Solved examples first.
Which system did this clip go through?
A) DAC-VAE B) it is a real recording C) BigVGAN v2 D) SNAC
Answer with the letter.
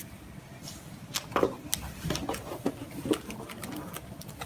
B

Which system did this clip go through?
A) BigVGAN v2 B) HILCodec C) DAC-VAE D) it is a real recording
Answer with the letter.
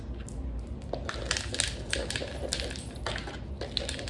D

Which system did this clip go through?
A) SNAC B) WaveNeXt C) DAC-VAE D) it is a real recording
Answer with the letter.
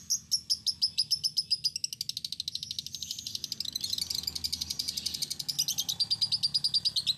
D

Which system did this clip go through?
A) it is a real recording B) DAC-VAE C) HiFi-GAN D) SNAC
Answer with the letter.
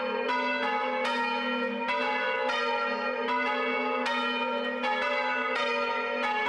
A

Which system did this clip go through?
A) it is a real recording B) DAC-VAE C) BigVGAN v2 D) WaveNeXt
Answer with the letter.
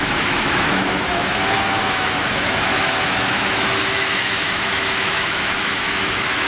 B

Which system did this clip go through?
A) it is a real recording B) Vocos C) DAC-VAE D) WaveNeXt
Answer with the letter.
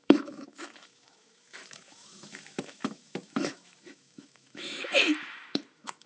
C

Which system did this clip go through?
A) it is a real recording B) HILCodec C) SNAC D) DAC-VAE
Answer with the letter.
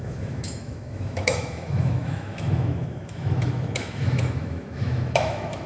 D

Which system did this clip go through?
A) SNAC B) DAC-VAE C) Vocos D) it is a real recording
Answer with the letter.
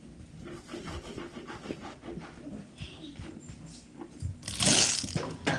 D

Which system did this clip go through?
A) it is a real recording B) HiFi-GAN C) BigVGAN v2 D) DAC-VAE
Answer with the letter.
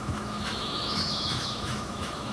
D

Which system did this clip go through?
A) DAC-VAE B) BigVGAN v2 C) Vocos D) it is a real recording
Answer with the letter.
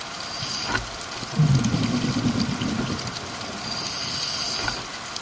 D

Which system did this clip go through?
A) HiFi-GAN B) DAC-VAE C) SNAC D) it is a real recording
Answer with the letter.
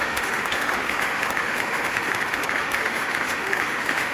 B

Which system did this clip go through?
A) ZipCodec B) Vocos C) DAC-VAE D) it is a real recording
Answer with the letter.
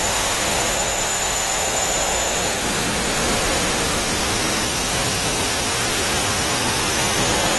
C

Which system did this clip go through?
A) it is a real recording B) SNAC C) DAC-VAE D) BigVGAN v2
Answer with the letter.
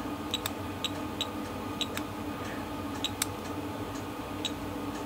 A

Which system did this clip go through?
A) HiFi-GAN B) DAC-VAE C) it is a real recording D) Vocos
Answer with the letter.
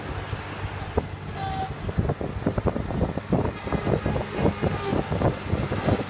C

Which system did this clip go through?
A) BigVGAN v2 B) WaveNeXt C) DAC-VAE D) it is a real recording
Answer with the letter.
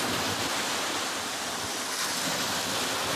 D